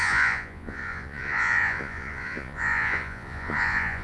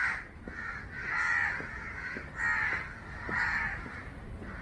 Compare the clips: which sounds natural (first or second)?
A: second